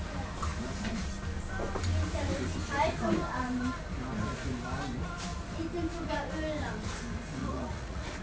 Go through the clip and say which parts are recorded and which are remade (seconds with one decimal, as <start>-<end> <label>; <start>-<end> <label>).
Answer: 0.0-7.4 recorded; 7.4-8.2 remade